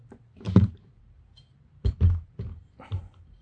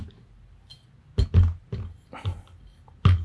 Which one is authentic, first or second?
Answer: second